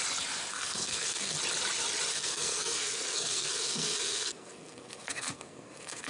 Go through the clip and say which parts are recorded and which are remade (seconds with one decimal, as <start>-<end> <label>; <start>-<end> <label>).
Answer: 0.0-0.5 recorded; 0.5-1.4 remade; 1.4-2.1 recorded; 2.1-6.1 remade